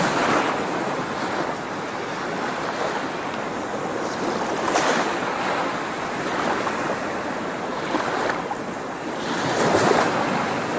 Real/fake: real